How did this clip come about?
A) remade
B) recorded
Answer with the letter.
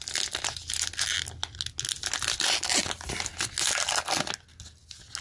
B